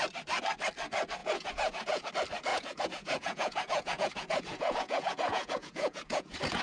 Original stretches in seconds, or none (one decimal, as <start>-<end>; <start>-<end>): 0.0-1.2; 2.1-2.5